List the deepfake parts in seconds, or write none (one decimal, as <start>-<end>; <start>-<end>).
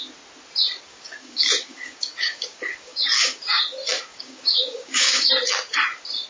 0.9-3.6; 4.1-5.3